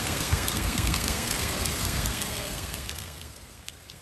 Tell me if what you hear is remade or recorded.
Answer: remade